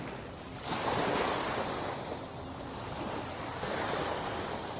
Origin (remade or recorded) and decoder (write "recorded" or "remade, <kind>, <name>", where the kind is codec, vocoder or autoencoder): recorded